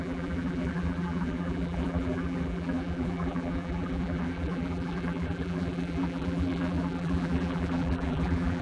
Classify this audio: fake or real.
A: fake